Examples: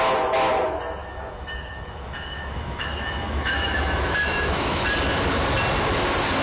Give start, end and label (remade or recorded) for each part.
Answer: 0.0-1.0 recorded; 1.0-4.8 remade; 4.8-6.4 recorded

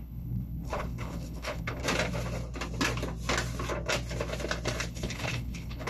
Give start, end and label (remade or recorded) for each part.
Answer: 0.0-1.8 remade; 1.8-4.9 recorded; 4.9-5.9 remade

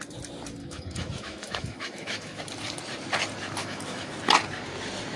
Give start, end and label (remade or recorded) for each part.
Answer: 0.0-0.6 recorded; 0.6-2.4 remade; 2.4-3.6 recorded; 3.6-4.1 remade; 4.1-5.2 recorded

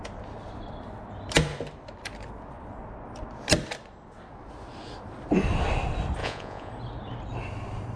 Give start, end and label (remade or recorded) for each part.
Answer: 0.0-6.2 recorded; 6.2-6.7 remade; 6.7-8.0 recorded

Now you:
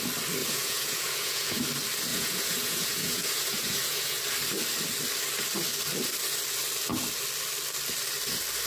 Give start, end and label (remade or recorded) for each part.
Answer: 0.0-0.4 recorded; 0.4-1.6 remade; 1.6-2.1 recorded; 2.1-4.2 remade; 4.2-8.7 recorded

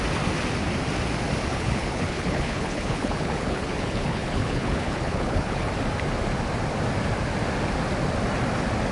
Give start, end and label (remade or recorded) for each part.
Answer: 0.0-1.5 recorded; 1.5-5.7 remade; 5.7-8.9 recorded

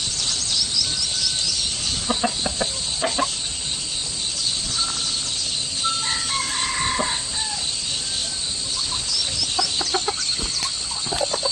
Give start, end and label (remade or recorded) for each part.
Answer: 0.0-0.7 remade; 0.7-1.1 recorded; 1.1-2.2 remade; 2.2-8.2 recorded; 8.2-8.7 remade; 8.7-11.5 recorded